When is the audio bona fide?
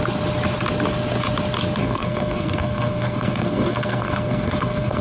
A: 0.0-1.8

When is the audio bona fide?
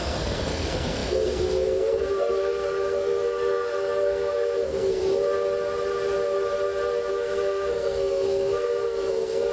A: 5.0-7.1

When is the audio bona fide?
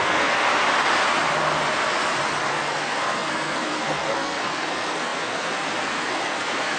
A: 0.6-2.5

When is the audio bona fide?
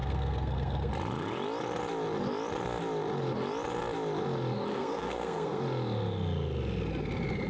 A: 0.9-4.7; 5.6-7.5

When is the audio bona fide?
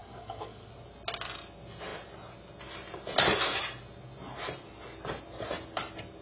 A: 0.7-6.2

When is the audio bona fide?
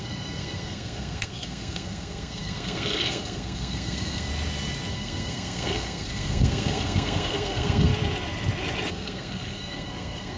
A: 4.3-4.9; 7.9-8.9